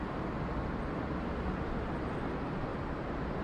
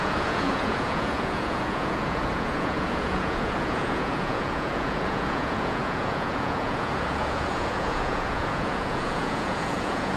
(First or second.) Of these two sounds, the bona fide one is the first